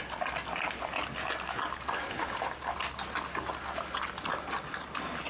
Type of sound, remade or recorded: recorded